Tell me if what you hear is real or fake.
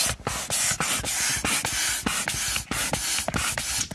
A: real